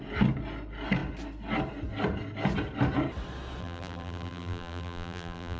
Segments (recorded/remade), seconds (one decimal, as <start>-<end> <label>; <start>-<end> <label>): 0.0-3.6 recorded; 3.6-5.6 remade